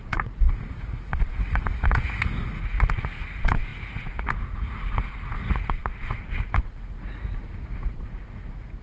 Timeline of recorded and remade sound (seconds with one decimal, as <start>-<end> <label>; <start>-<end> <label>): 0.0-8.8 remade